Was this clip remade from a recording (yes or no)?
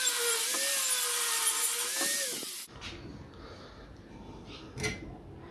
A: no